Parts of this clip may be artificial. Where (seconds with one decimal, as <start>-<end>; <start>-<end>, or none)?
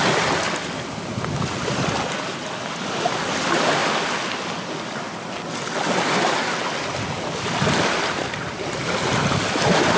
none